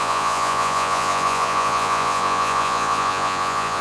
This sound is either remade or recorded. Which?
remade